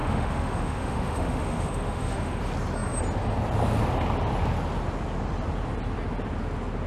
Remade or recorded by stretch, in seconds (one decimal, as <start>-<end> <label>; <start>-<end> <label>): 0.0-2.4 remade; 2.4-6.9 recorded